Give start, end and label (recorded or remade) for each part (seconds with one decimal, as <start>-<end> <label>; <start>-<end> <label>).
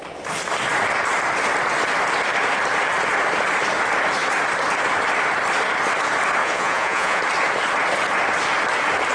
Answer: 0.0-6.4 recorded; 6.4-7.2 remade; 7.2-9.1 recorded